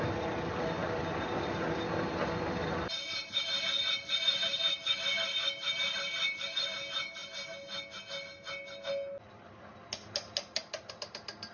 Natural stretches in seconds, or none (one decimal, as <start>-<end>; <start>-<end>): 0.0-11.5